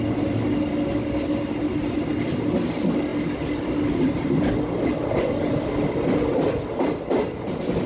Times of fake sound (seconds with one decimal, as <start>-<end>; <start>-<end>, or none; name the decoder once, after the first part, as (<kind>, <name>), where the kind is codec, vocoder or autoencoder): none